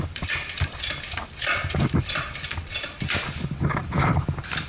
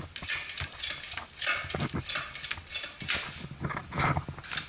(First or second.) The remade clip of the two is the first